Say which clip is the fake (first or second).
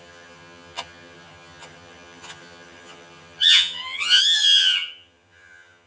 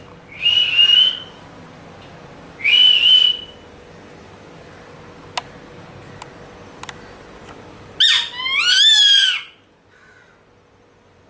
first